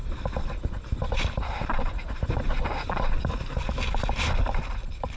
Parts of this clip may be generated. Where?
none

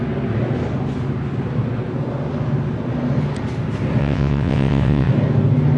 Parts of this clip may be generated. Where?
4.0-5.1